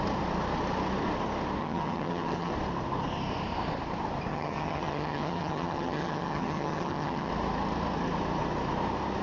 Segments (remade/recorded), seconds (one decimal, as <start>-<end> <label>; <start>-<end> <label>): 0.0-1.6 recorded; 1.6-2.5 remade; 2.5-4.3 recorded; 4.3-7.3 remade; 7.3-9.2 recorded